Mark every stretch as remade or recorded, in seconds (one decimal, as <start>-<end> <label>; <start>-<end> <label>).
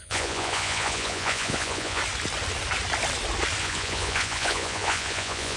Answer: 0.0-2.0 remade; 2.0-3.6 recorded; 3.6-5.6 remade